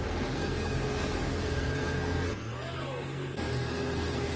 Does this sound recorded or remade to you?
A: remade